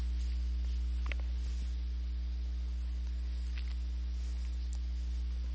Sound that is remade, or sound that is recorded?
recorded